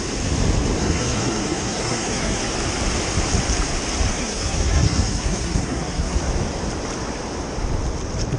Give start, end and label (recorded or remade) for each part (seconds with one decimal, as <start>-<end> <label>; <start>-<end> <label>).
0.0-0.8 recorded; 0.8-2.4 remade; 2.4-4.1 recorded; 4.1-6.2 remade; 6.2-8.4 recorded